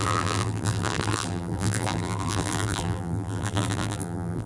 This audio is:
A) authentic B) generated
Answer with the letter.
B